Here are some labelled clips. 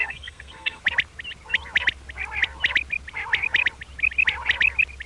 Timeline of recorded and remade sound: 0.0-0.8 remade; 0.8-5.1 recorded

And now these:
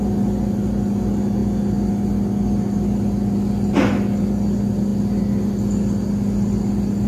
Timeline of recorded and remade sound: 0.0-7.1 recorded

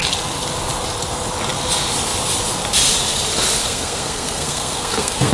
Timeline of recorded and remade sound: 0.0-3.6 recorded; 3.6-5.3 remade

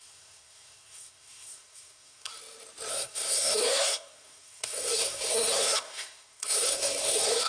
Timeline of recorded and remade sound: 0.0-2.3 remade; 2.3-2.9 recorded; 2.9-7.5 remade

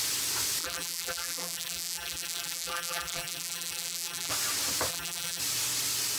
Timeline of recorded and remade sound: 0.0-0.6 recorded; 0.6-4.3 remade; 4.3-4.9 recorded; 4.9-5.4 remade; 5.4-6.2 recorded

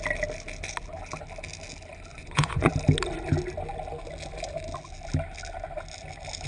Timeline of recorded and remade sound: 0.0-2.1 recorded; 2.1-2.7 remade; 2.7-6.5 recorded

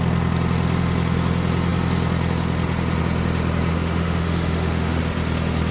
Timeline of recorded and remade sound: 0.0-3.7 recorded; 3.7-5.0 remade; 5.0-5.7 recorded